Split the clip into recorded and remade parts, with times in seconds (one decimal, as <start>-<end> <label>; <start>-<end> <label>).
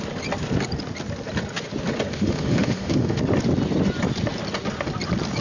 0.0-2.1 recorded; 2.1-3.2 remade; 3.2-5.4 recorded